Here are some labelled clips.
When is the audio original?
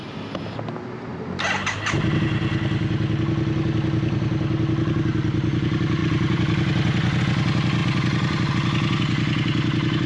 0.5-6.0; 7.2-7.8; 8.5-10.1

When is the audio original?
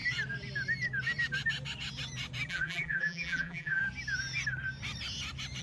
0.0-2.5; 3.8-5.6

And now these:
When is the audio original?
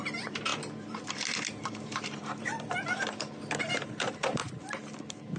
4.4-5.4